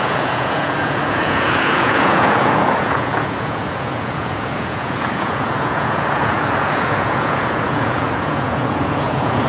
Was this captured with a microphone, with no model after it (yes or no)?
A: no